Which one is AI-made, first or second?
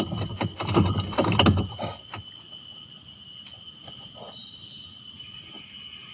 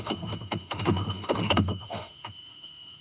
second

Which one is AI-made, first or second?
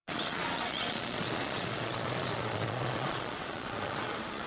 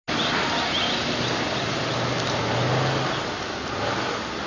first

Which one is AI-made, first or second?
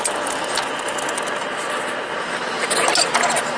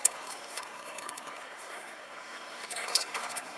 second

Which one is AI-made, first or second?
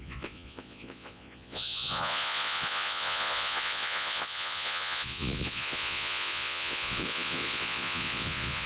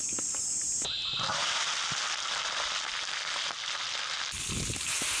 first